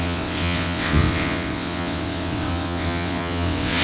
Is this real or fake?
fake